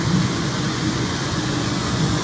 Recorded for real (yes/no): no